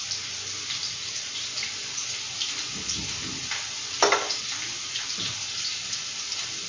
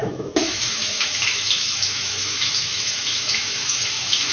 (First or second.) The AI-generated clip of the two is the second